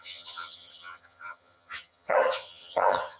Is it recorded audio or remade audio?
remade